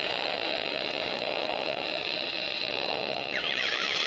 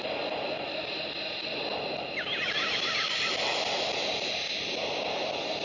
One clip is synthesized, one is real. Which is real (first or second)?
second